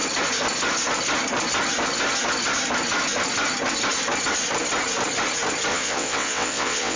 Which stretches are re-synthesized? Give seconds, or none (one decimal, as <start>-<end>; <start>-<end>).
5.7-7.0

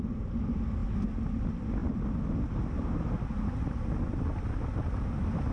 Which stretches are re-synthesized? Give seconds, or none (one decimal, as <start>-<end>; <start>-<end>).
none